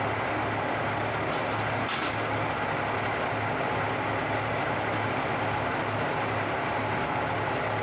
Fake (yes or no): no